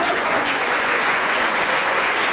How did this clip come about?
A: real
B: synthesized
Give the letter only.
B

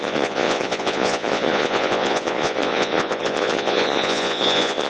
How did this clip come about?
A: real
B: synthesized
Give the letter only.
B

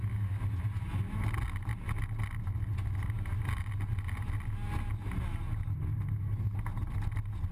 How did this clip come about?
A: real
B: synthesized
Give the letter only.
A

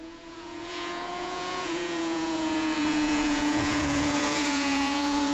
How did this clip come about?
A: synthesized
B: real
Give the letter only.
A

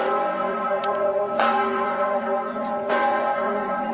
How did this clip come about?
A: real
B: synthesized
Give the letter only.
B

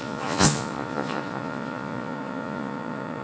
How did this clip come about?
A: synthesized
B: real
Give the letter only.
A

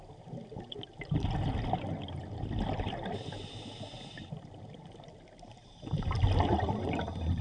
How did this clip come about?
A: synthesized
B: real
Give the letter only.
B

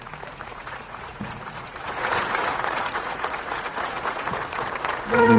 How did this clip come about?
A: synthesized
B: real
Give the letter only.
A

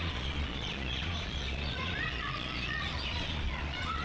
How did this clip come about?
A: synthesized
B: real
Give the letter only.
A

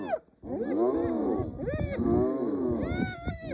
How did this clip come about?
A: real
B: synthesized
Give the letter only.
A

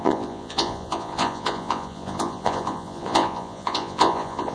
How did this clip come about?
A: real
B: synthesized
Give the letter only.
B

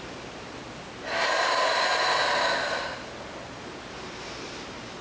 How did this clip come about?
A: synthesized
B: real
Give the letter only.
B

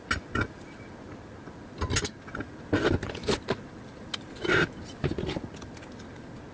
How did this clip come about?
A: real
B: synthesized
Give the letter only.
A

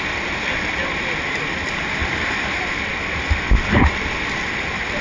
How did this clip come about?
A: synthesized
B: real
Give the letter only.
B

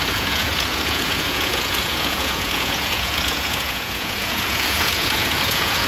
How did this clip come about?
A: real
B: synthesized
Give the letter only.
B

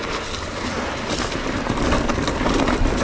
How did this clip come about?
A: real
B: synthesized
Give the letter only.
A